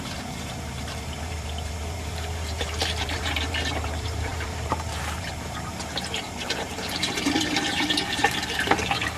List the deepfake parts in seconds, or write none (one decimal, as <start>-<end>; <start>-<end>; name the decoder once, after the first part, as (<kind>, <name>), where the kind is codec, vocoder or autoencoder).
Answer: 0.0-9.2 (vocoder, BigVGAN v2)